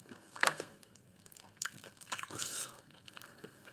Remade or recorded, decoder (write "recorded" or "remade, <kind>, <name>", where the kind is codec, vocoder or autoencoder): remade, codec, SNAC